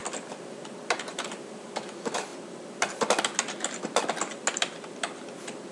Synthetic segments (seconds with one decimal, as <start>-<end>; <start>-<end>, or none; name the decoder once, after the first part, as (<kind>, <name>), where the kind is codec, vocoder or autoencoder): 1.1-2.3 (vocoder, BigVGAN v2)